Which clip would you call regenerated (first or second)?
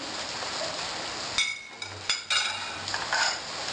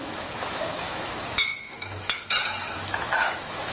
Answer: second